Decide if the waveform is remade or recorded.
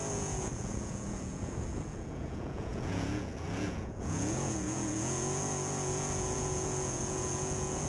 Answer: remade